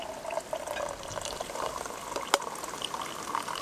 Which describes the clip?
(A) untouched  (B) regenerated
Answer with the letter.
A